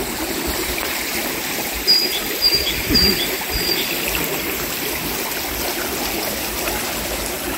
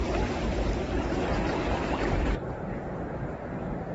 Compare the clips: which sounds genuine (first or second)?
first